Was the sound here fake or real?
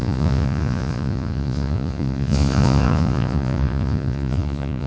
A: fake